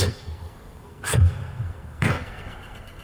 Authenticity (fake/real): fake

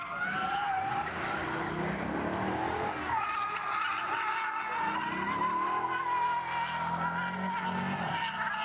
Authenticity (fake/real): real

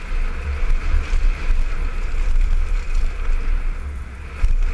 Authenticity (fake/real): real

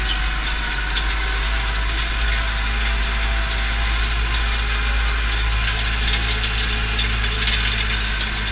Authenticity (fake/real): real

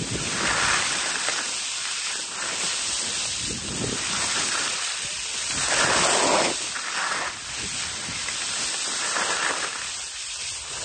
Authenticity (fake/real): real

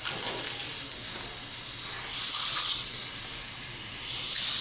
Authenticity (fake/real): real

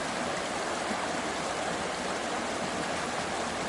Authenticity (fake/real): real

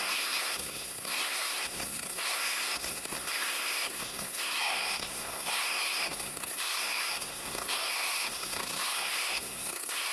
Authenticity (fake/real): fake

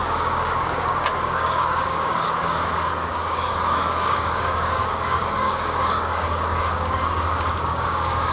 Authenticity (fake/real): fake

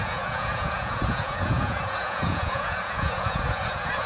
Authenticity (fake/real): fake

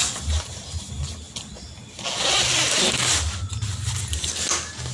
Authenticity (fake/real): real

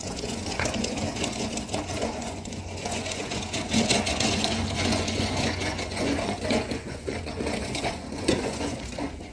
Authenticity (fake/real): fake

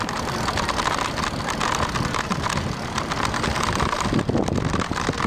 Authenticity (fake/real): real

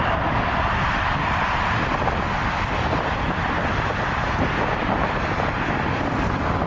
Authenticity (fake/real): real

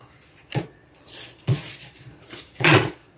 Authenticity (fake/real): fake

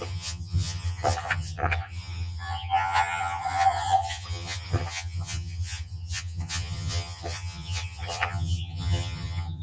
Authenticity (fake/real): fake